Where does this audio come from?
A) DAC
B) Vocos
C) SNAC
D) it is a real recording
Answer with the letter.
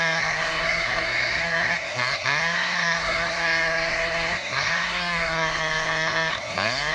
C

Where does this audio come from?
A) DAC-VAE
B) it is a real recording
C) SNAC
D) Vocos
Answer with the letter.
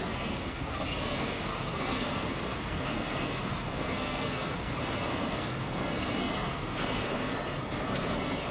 C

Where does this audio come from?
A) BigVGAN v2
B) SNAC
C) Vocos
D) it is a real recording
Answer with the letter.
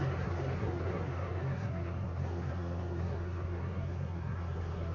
B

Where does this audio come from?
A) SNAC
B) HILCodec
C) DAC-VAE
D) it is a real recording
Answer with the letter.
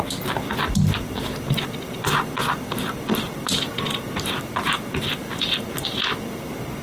D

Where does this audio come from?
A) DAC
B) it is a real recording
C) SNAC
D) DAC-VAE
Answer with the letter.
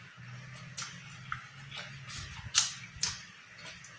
B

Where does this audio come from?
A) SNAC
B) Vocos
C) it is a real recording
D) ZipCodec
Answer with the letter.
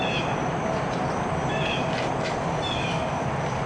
C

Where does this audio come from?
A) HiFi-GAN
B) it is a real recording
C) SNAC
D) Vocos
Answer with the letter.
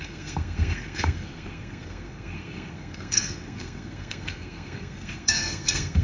C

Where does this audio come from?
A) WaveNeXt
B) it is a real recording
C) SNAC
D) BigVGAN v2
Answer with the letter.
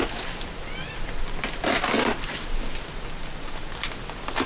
B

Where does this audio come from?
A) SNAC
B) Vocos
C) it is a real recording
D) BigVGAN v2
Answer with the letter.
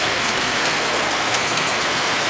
A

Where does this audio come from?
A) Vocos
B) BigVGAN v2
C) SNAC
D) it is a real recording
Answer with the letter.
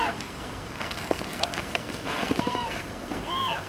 C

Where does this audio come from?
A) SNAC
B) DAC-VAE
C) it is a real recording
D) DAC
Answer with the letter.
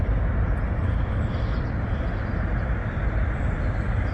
C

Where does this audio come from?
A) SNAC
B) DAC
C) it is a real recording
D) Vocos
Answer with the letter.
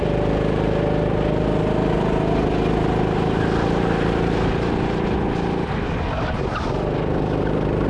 C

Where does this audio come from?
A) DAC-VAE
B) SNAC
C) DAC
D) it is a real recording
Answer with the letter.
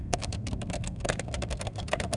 B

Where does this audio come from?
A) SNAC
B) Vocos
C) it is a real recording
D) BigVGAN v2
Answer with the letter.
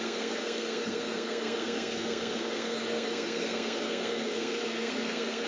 A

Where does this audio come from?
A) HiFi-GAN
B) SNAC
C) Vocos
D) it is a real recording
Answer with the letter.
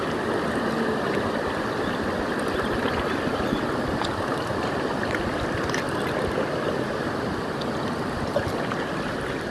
D